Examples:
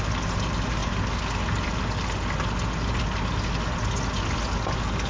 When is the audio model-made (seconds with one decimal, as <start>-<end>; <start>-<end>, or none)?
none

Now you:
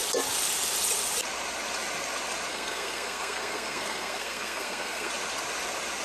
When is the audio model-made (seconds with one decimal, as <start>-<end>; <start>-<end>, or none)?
2.5-5.1

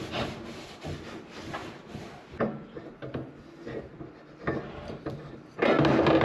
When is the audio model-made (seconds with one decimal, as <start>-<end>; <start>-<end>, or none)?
none